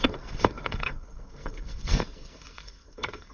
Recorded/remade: remade